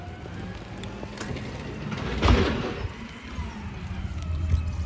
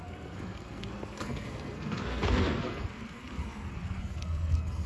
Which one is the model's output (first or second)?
second